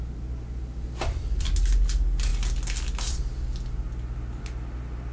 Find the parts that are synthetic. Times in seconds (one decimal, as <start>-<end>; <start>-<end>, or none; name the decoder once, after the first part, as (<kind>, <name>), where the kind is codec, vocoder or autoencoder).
none